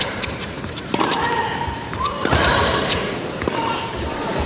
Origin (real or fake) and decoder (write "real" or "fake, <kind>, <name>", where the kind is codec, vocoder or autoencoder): fake, vocoder, BigVGAN v2